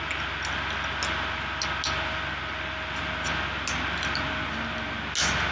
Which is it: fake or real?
real